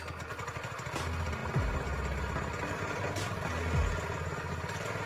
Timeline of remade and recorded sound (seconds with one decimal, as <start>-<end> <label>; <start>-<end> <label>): 0.0-5.1 recorded